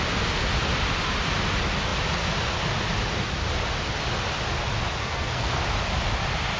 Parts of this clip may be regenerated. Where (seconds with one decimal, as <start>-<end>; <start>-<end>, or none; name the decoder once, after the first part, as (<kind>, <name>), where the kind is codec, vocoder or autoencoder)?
5.0-5.6 (codec, SNAC)